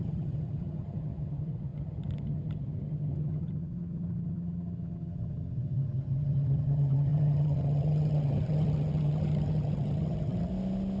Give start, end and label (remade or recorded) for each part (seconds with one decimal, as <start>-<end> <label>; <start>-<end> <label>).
0.0-10.5 remade; 10.5-11.0 recorded